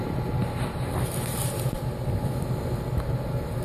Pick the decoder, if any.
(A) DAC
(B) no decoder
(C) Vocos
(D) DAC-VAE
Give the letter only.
B